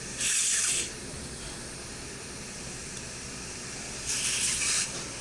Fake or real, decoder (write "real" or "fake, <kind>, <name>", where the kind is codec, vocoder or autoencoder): fake, vocoder, BigVGAN v2